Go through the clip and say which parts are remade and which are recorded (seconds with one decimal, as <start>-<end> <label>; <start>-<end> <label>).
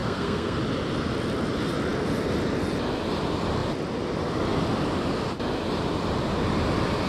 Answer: 0.0-0.6 remade; 0.6-7.1 recorded